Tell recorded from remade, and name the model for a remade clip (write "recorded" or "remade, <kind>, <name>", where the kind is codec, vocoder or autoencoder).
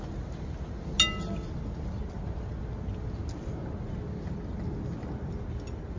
recorded